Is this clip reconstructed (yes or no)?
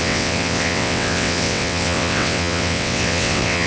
yes